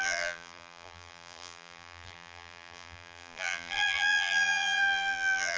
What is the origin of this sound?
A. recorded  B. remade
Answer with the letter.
B